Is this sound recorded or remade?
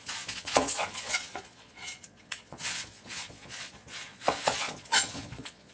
remade